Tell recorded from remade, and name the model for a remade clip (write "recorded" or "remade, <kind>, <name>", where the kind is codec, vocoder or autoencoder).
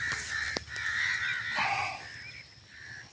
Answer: recorded